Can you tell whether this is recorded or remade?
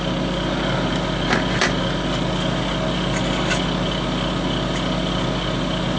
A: recorded